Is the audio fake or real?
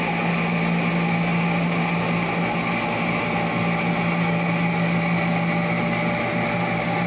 real